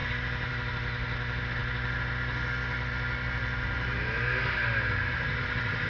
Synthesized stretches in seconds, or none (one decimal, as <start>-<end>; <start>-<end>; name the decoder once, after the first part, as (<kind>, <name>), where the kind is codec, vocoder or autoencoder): none